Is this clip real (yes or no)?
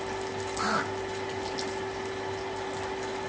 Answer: yes